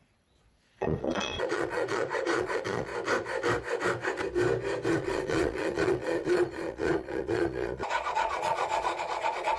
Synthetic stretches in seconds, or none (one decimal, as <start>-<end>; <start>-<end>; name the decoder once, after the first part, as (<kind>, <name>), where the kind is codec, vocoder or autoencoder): 0.0-2.9 (vocoder, Vocos); 4.9-9.6